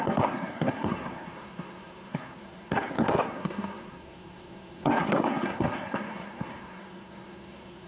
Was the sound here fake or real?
fake